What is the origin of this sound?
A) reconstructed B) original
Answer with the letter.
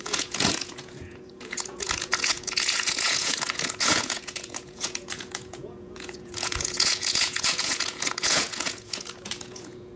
A